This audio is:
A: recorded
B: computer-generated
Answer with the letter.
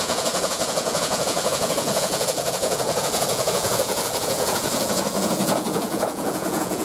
B